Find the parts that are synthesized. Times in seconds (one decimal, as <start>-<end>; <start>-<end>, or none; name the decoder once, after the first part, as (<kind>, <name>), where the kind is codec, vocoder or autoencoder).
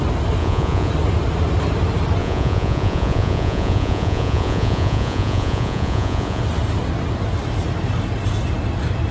0.4-0.9 (vocoder, Vocos); 2.2-6.4